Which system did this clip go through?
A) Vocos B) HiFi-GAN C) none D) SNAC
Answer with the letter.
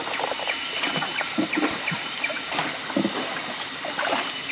C